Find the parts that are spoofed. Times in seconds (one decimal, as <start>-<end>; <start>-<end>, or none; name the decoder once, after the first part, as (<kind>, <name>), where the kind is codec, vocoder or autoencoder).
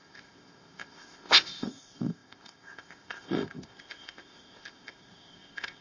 0.0-5.8 (codec, ZipCodec)